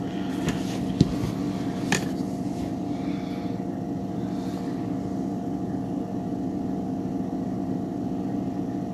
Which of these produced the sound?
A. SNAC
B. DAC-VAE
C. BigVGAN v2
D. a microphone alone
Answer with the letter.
D